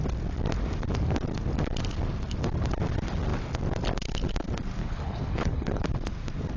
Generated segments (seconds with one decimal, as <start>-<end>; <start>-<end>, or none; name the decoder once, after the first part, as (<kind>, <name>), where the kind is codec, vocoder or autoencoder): 4.8-5.8 (codec, HILCodec)